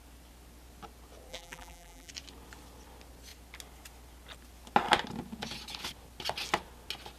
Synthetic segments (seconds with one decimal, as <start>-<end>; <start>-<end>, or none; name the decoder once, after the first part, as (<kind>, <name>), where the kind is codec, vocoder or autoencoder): 1.3-2.1 (vocoder, BigVGAN v2)

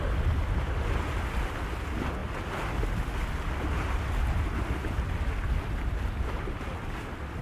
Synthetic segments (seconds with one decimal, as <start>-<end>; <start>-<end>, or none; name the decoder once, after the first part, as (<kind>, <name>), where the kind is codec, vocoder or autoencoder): none

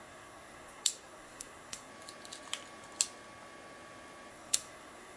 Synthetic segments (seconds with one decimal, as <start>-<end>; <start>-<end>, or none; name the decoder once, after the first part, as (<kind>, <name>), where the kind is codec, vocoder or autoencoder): 0.0-1.9 (codec, SNAC); 4.3-5.2

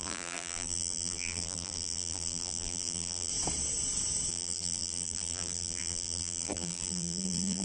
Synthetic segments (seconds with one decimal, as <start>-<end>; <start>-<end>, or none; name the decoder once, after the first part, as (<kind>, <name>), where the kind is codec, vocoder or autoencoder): 0.0-3.3 (vocoder, BigVGAN v2); 4.3-7.6

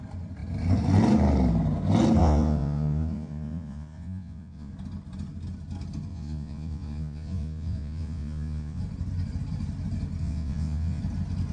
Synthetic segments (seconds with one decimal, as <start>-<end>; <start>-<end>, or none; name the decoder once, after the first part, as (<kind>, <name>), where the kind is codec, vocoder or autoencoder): 2.2-4.7 (vocoder, Vocos); 6.1-8.8; 10.2-11.0